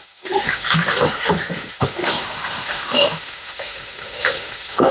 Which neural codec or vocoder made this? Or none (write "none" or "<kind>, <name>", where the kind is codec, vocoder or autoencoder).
autoencoder, DAC-VAE